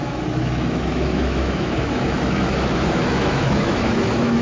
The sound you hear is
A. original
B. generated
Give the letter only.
B